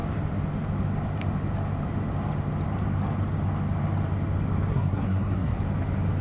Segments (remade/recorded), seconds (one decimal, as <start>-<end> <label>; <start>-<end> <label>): 0.0-4.7 recorded; 4.7-5.6 remade; 5.6-6.2 recorded